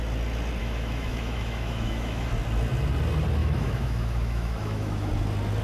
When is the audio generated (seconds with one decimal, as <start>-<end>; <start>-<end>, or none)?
0.6-2.3; 3.4-5.1